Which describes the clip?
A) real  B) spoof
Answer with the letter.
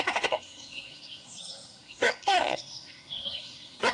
B